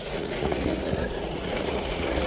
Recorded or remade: remade